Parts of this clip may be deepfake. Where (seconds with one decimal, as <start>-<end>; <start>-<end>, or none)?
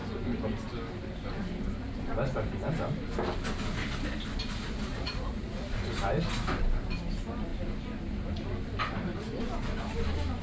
4.9-5.8